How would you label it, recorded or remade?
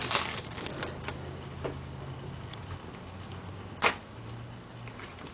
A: recorded